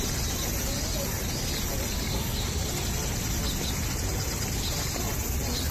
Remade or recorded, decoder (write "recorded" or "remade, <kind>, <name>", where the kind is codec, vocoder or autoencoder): recorded